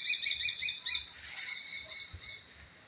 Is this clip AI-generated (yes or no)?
no